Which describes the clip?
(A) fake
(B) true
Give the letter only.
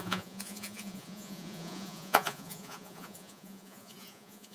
A